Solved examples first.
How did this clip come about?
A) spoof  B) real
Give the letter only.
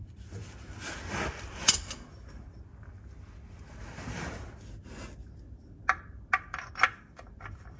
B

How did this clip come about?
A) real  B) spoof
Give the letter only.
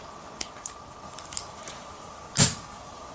A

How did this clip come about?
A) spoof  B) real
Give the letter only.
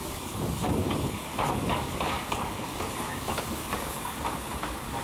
A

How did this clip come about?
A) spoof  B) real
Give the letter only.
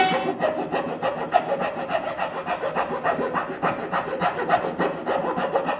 B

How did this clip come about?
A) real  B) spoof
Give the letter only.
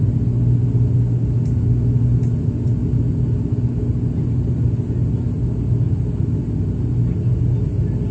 A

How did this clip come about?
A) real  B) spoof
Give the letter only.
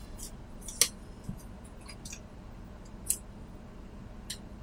A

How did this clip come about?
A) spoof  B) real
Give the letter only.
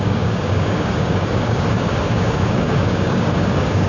A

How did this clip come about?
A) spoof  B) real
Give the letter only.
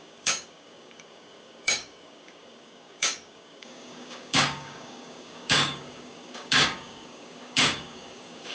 A